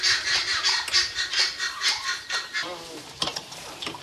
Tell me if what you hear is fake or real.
fake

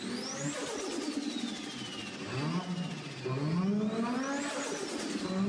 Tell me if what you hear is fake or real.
real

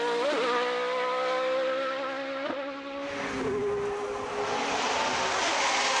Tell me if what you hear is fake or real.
real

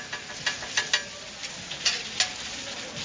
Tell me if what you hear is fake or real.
real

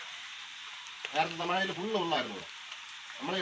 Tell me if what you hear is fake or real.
fake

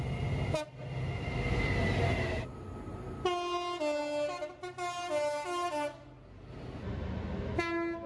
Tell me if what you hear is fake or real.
real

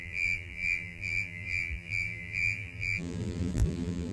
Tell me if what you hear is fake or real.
fake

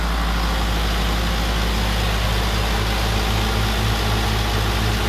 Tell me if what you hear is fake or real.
real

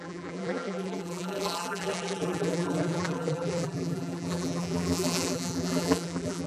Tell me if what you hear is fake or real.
fake